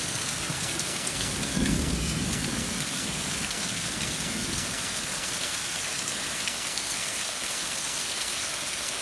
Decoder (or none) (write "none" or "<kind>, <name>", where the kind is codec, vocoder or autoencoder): codec, SNAC